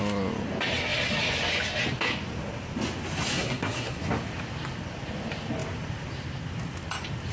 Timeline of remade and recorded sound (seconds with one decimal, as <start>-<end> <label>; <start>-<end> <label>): 0.0-3.3 recorded; 3.3-4.0 remade; 4.0-7.3 recorded